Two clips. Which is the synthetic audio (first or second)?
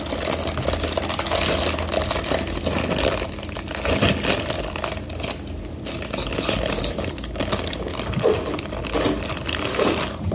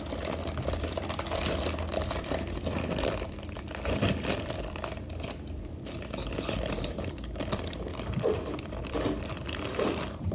second